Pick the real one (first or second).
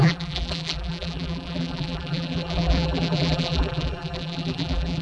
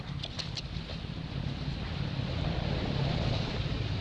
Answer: second